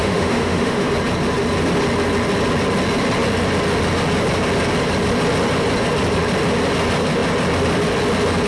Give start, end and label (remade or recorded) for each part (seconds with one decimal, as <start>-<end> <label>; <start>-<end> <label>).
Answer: 0.0-0.9 remade; 0.9-8.5 recorded